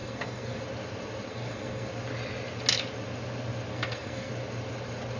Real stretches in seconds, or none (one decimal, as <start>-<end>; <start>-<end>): 0.6-1.3; 1.9-3.7; 4.3-5.2